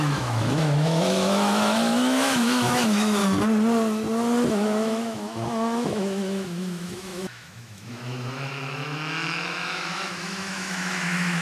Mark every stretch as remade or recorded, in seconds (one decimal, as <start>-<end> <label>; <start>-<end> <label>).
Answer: 0.0-3.2 remade; 3.2-4.5 recorded; 4.5-11.4 remade